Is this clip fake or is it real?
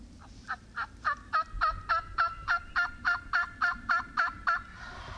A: real